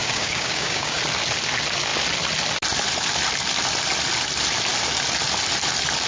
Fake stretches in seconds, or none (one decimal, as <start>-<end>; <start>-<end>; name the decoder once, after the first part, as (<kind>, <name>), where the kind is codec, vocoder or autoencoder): 0.0-1.0 (codec, DAC)